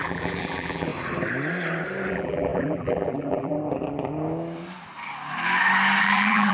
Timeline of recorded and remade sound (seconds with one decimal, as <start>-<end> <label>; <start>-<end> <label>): 0.0-0.9 remade; 0.9-2.1 recorded; 2.1-3.6 remade; 3.6-6.0 recorded; 6.0-6.5 remade